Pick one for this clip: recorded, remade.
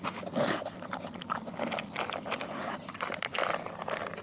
recorded